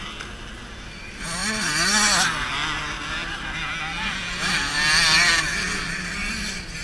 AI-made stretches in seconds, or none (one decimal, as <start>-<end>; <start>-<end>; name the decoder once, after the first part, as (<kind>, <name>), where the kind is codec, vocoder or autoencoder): none